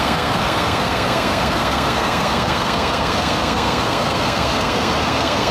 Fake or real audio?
fake